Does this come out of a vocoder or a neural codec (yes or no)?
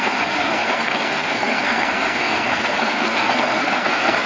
yes